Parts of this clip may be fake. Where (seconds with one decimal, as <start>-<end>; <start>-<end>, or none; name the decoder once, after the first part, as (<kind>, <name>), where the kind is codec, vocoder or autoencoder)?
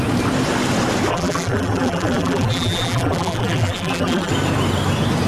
1.1-4.3 (vocoder, BigVGAN v2)